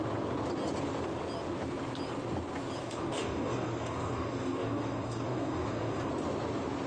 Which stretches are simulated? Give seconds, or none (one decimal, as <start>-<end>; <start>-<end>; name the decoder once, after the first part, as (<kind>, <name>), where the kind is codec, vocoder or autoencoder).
2.8-6.1 (codec, DAC)